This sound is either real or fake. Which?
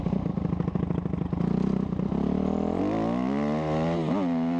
real